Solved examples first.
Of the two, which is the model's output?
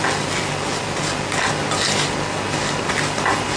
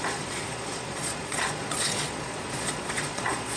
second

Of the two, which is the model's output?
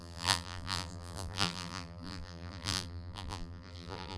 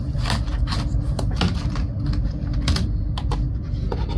first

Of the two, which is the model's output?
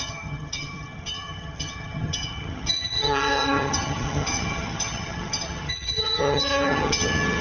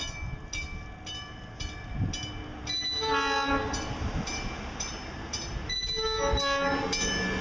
first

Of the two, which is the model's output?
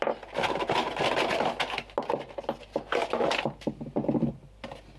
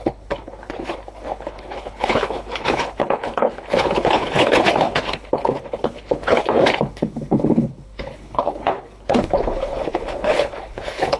second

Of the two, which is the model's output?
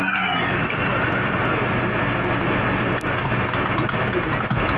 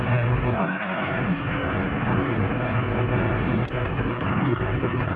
second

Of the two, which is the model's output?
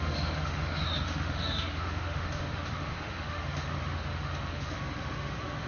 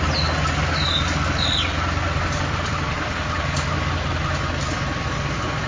first